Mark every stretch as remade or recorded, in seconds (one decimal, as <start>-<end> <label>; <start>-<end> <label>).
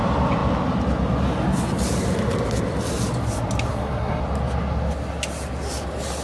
0.0-3.7 recorded; 3.7-4.2 remade; 4.2-6.2 recorded